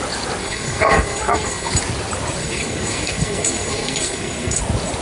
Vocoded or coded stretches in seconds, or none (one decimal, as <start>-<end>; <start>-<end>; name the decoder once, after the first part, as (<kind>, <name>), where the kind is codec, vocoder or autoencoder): 0.4-1.7 (codec, SNAC); 2.4-4.6